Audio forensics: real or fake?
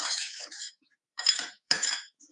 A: fake